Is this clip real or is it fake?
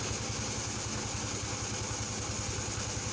real